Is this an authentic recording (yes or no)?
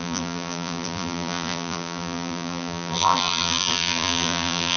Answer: no